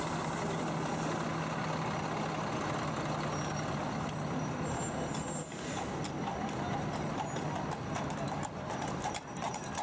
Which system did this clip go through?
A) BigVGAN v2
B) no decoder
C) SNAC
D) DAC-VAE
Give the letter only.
B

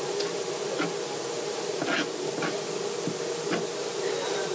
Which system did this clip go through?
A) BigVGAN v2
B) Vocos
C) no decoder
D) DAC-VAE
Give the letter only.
C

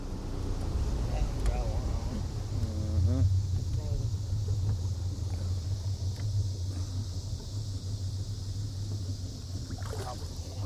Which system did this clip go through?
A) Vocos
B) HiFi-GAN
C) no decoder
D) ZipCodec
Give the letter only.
C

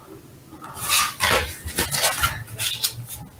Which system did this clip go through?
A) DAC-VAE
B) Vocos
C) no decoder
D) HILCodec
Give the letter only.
C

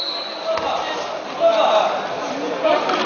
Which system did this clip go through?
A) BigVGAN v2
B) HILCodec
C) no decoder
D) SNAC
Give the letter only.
C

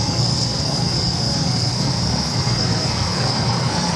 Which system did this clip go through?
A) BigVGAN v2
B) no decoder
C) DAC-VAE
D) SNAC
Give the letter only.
D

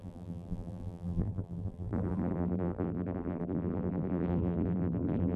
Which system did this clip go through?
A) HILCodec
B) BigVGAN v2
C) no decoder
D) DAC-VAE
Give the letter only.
B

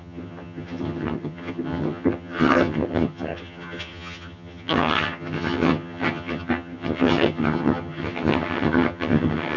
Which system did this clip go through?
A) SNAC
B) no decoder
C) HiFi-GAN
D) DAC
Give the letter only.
C